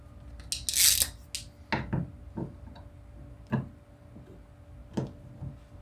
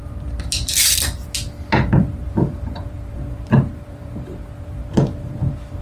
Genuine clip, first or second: first